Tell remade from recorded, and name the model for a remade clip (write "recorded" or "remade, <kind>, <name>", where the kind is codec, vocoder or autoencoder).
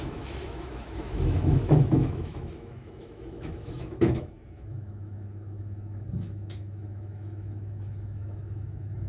remade, autoencoder, DAC-VAE